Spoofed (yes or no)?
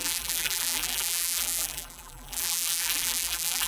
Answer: yes